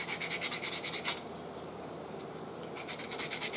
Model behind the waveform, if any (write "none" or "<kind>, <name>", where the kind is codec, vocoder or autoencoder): none